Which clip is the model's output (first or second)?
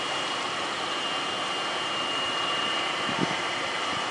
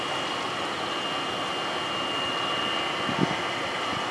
first